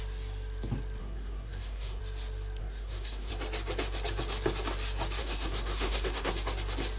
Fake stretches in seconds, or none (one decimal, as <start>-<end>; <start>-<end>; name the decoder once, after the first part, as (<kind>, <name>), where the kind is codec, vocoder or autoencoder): 1.0-2.0 (codec, SNAC); 2.6-3.3; 5.2-6.3